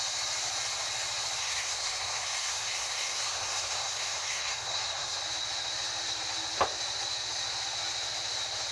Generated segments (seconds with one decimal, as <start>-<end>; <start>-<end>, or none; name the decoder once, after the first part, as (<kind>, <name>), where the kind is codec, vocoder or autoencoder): 1.4-5.2 (codec, SNAC)